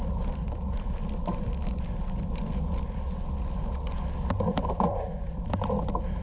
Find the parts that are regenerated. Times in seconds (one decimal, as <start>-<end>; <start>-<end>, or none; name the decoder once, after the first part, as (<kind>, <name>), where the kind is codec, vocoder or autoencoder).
none